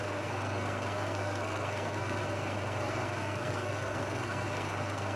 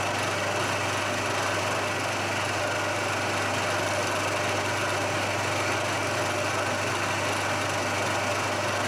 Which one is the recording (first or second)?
second